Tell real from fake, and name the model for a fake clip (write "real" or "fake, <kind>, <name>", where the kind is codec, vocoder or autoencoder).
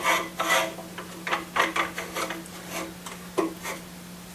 real